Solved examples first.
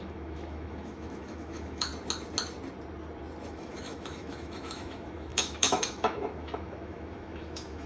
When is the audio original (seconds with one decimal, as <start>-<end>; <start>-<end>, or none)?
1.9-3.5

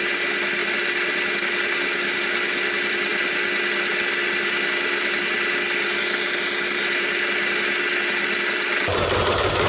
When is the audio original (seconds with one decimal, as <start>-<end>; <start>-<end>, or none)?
0.0-9.7

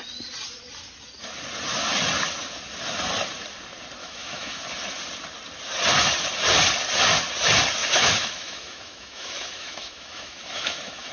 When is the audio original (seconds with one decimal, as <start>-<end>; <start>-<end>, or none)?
0.0-4.0; 4.6-7.8

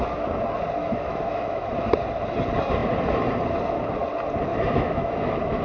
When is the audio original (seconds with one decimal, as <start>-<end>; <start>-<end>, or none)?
0.0-0.8; 1.7-4.5

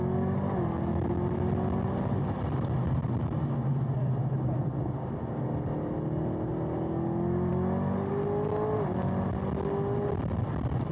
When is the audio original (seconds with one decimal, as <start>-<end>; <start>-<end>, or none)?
0.0-10.9

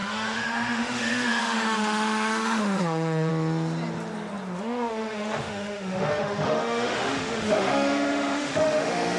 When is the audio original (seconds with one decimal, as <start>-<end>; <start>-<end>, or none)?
3.3-4.6

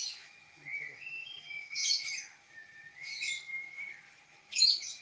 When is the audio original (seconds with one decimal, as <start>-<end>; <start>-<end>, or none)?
none